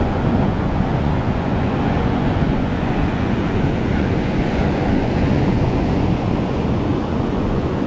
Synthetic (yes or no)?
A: yes